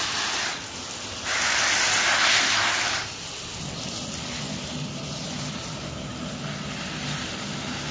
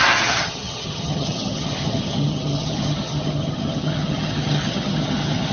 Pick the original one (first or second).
first